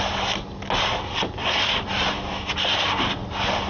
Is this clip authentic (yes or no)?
yes